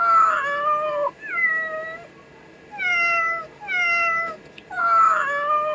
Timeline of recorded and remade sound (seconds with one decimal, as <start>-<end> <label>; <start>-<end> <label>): 0.0-5.7 recorded